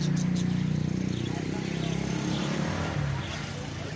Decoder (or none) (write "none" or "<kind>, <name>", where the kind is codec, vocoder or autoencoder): none